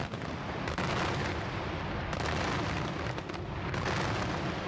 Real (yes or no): yes